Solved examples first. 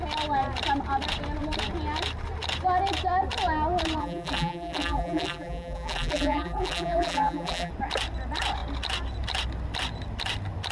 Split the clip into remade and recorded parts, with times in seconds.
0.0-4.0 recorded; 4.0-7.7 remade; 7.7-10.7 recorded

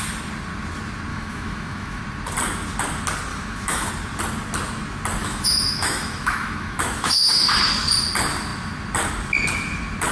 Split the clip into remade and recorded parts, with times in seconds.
0.0-1.1 recorded; 1.1-2.0 remade; 2.0-3.3 recorded; 3.3-3.9 remade; 3.9-5.2 recorded; 5.2-7.6 remade; 7.6-10.1 recorded

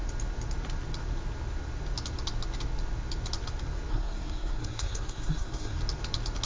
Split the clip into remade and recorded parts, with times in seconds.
0.0-3.9 recorded; 3.9-5.8 remade; 5.8-6.5 recorded

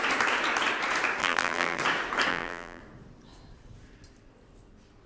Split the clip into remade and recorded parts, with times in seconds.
0.0-1.2 recorded; 1.2-1.8 remade; 1.8-2.3 recorded; 2.3-2.8 remade; 2.8-5.1 recorded

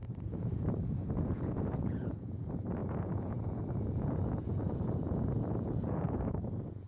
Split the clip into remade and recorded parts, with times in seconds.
0.0-6.9 remade